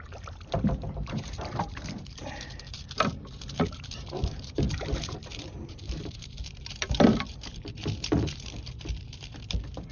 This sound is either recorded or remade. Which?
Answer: remade